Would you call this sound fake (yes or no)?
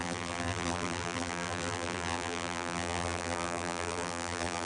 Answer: yes